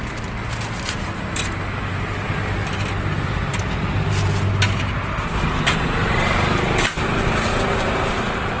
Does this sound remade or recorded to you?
recorded